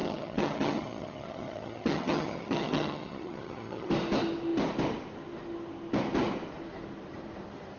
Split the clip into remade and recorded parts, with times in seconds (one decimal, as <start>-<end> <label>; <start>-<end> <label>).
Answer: 0.0-3.9 remade; 3.9-7.8 recorded